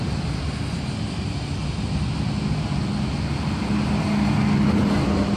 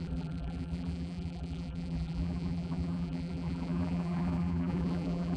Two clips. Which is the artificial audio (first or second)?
second